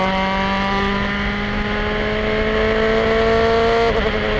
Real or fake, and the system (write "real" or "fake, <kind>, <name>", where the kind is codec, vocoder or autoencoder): real